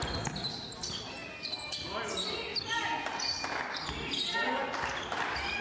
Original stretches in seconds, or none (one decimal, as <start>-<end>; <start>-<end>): 0.0-5.6